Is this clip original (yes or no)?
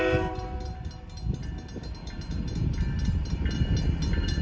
yes